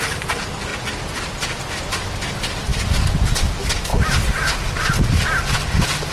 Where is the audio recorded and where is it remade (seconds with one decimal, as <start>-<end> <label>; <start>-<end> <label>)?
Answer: 0.0-6.1 recorded